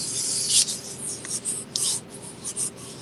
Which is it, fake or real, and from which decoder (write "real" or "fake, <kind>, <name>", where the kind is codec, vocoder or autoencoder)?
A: real